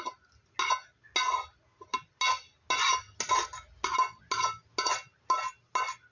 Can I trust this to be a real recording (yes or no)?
yes